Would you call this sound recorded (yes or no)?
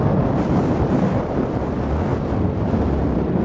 yes